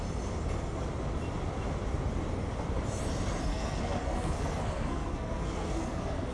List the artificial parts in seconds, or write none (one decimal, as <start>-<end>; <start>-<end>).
3.5-6.3